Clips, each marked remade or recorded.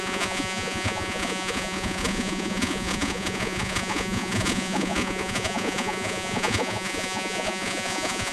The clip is remade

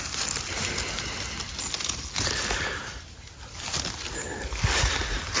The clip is recorded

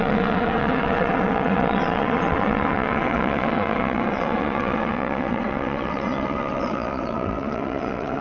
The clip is remade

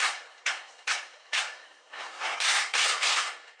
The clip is remade